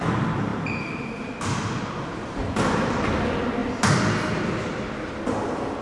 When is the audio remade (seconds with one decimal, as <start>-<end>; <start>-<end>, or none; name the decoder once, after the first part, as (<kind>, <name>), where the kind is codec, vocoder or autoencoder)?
0.5-1.3 (vocoder, BigVGAN v2)